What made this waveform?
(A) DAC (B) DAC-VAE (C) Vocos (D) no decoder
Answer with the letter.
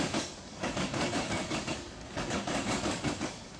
A